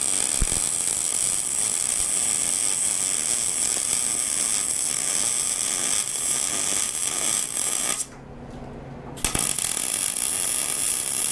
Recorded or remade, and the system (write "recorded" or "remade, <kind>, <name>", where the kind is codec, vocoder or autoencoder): recorded